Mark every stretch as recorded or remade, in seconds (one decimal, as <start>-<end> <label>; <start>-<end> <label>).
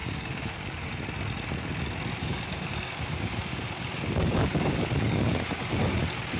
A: 0.0-0.9 remade; 0.9-2.2 recorded; 2.2-6.0 remade; 6.0-6.4 recorded